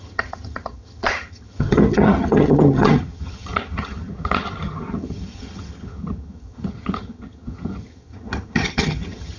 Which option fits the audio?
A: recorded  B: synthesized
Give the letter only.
B